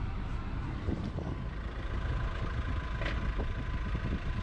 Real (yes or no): yes